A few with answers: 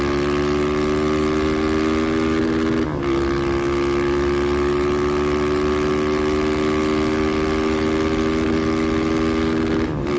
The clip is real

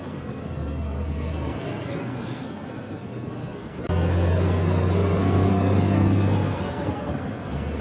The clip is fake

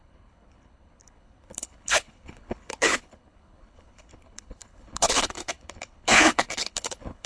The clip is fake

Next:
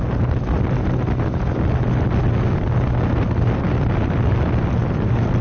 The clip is real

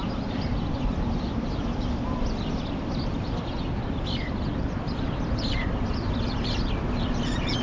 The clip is fake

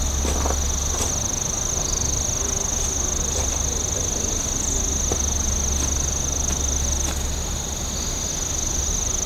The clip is real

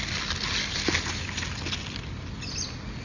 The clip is real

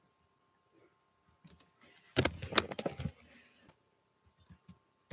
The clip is real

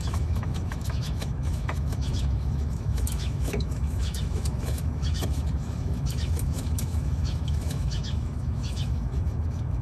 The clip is fake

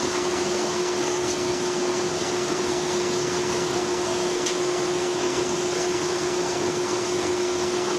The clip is fake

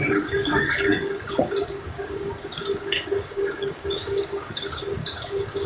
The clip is fake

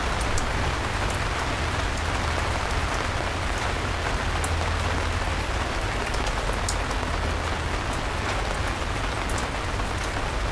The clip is real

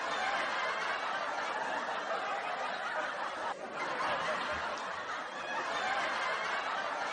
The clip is real